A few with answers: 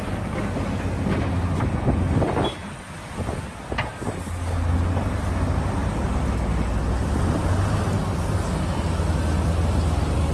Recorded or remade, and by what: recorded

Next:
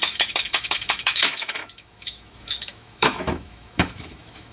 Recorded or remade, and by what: remade, autoencoder, DAC-VAE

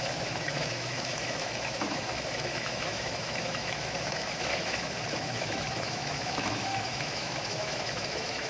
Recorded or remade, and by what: remade, autoencoder, DAC-VAE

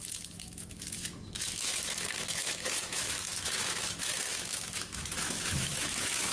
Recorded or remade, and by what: remade, autoencoder, DAC-VAE